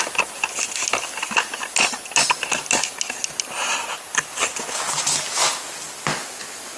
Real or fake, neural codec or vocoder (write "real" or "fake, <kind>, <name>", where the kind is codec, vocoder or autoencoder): real